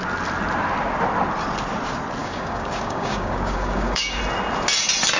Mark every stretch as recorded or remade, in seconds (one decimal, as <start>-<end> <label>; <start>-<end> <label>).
0.0-2.2 recorded; 2.2-4.2 remade; 4.2-5.2 recorded